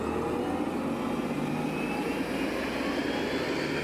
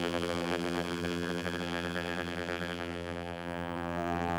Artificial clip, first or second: second